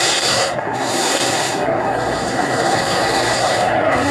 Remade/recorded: remade